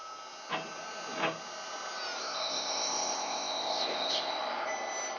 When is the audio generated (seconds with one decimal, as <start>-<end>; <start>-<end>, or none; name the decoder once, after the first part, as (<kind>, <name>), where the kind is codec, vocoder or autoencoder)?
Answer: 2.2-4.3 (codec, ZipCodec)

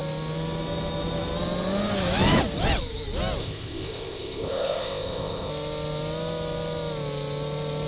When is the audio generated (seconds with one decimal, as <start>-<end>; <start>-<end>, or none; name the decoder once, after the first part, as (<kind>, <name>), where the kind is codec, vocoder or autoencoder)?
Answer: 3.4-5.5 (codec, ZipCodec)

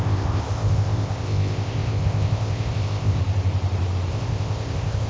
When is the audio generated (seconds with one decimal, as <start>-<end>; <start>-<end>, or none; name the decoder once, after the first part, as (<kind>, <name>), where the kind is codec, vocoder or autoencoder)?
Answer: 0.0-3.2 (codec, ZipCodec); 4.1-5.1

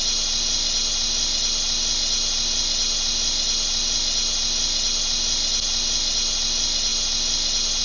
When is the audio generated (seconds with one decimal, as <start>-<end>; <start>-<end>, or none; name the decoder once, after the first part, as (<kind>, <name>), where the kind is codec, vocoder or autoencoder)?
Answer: none

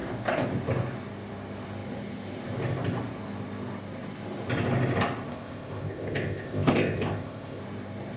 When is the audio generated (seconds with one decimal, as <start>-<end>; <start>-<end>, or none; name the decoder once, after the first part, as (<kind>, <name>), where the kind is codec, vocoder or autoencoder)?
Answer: 5.3-7.6 (codec, ZipCodec)

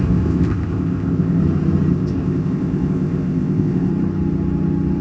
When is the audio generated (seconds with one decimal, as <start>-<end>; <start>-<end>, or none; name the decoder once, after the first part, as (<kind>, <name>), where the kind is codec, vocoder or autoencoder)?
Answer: 0.0-1.4 (codec, ZipCodec); 1.9-3.9

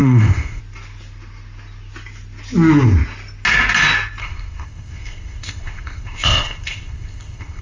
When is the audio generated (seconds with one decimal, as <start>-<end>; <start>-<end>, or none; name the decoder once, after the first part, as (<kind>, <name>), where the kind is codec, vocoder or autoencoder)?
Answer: 0.0-0.6 (codec, ZipCodec); 4.2-7.6